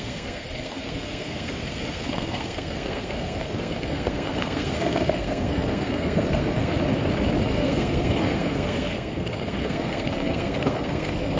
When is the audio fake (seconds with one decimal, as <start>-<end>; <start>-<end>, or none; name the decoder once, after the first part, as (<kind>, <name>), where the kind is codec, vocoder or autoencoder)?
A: 0.0-6.7 (codec, SNAC); 7.5-11.4